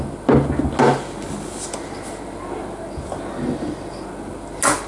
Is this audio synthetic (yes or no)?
no